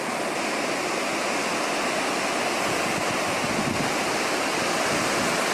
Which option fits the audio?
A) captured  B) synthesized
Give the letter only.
A